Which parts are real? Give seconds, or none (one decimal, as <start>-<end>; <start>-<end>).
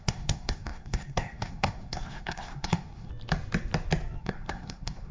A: 3.1-4.2